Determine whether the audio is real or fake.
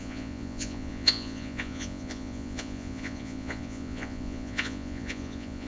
fake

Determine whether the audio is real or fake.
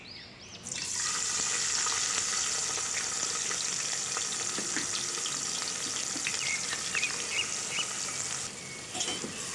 real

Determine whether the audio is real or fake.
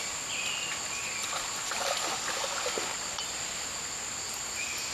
real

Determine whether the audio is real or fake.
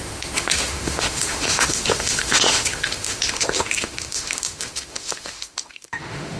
fake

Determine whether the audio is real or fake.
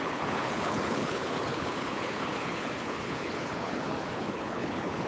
fake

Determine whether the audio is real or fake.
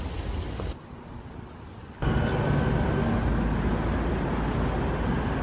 real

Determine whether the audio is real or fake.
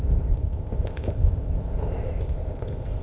fake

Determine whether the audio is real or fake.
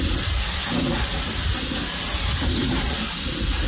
real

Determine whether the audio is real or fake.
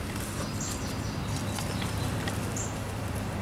real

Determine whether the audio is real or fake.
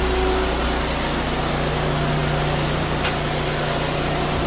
real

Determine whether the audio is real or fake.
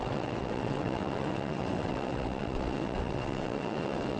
fake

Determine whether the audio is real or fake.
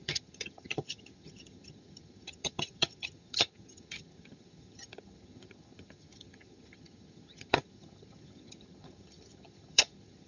fake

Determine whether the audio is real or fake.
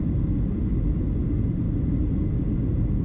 real